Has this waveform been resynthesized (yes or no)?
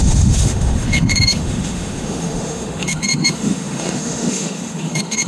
yes